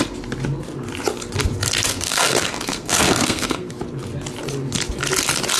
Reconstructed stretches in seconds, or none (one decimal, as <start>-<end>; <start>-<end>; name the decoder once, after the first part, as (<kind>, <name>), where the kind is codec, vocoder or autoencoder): 1.9-3.7 (codec, SNAC)